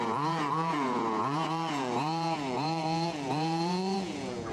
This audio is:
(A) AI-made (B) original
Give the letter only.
A